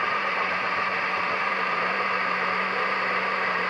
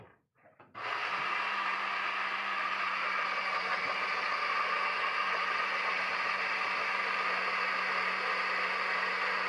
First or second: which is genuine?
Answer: second